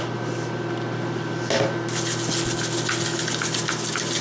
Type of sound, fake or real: real